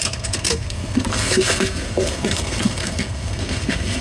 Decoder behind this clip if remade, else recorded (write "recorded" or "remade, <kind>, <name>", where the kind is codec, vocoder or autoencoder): remade, codec, SNAC